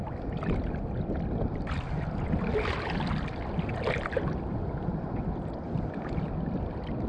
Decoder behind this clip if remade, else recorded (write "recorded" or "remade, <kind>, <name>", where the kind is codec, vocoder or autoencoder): recorded